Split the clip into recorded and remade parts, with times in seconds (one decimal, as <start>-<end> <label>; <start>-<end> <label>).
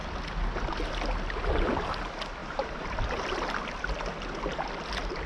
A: 0.0-2.4 recorded; 2.4-3.0 remade; 3.0-5.3 recorded